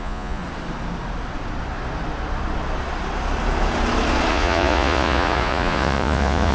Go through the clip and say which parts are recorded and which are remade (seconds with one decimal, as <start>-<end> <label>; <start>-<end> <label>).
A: 0.0-0.4 remade; 0.4-4.3 recorded; 4.3-6.5 remade